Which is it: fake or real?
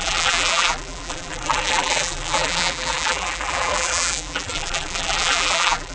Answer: fake